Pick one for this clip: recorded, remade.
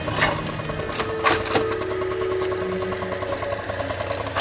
recorded